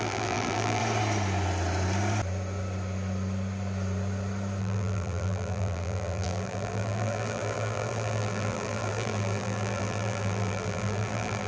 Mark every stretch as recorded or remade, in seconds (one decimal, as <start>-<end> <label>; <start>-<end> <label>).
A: 0.0-0.8 remade; 0.8-4.6 recorded; 4.6-11.5 remade